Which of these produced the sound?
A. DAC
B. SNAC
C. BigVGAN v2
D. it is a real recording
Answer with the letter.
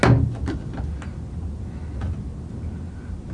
D